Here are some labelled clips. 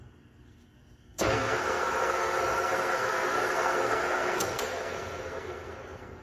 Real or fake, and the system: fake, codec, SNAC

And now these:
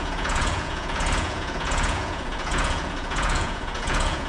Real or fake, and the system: fake, vocoder, Vocos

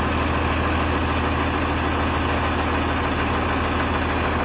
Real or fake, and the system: real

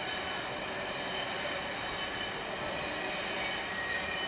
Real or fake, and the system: real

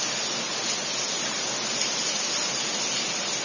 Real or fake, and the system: real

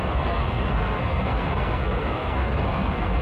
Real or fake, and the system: fake, codec, SNAC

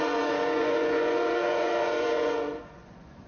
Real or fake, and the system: fake, vocoder, Vocos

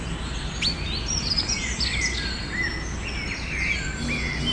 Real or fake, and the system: real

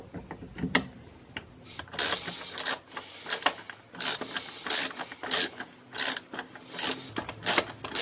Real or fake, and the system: real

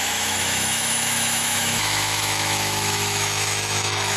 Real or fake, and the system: fake, autoencoder, DAC-VAE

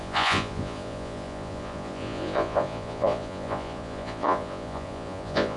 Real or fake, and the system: fake, vocoder, Vocos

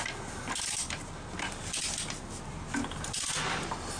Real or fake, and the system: real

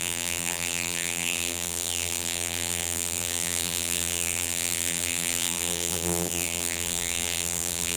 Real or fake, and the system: fake, vocoder, BigVGAN v2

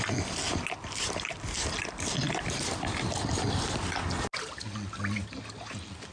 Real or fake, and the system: real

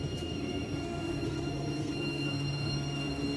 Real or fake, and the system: fake, codec, SNAC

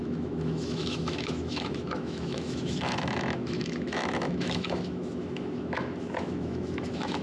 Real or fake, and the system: fake, autoencoder, DAC-VAE